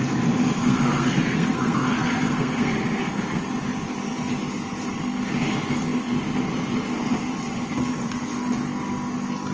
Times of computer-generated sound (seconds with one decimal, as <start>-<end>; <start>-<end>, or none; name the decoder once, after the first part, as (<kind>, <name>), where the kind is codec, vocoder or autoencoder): 0.6-3.4 (codec, SNAC)